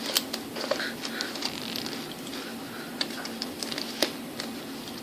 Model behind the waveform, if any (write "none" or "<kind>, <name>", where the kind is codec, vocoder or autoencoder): vocoder, BigVGAN v2